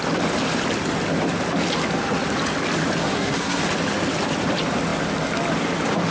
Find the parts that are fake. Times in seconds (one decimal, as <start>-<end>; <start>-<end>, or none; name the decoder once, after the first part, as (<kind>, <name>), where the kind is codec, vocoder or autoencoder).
3.0-3.6 (codec, SNAC)